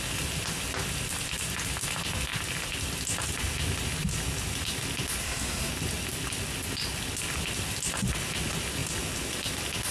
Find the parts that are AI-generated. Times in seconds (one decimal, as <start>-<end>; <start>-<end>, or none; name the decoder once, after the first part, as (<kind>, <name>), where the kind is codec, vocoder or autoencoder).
5.2-5.7 (codec, SNAC)